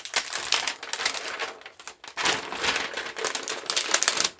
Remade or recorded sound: recorded